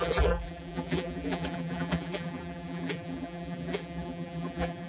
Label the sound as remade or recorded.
remade